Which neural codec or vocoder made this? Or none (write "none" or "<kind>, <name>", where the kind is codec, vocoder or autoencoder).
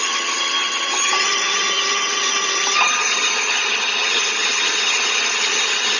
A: vocoder, HiFi-GAN